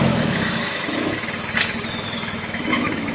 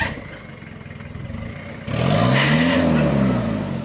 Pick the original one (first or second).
second